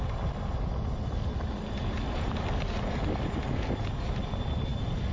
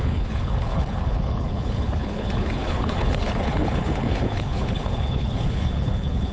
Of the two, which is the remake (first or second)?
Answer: second